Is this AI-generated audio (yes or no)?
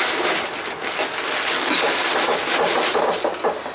no